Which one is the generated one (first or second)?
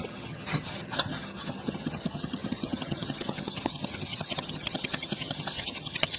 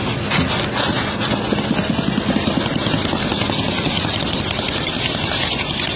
first